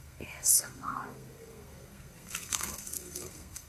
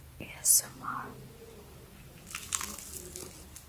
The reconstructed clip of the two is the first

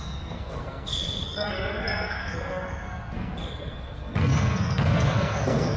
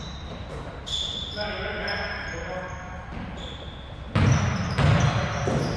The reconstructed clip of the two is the first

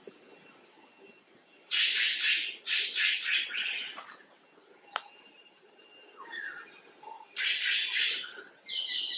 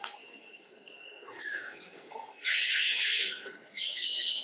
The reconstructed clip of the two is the second